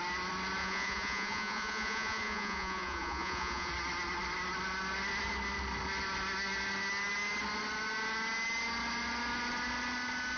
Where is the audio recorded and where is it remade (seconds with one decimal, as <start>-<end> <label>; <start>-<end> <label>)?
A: 0.0-0.6 recorded; 0.6-3.7 remade; 3.7-10.4 recorded